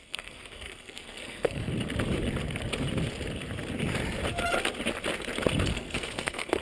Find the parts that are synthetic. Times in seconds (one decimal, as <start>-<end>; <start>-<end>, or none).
0.0-1.7; 5.7-6.6